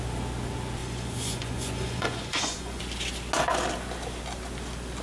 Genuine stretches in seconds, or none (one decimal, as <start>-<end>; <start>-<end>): 0.0-0.8; 2.8-5.0